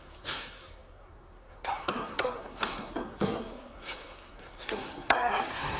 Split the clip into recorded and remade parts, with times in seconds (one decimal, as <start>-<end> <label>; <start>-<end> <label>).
0.0-5.8 remade